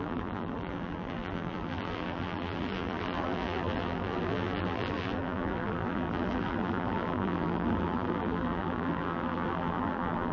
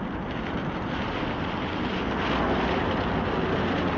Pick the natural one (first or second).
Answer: second